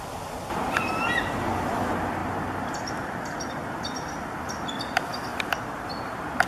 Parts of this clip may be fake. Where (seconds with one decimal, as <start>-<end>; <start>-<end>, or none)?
none